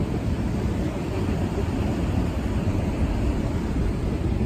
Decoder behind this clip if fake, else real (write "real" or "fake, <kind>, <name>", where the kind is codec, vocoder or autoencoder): real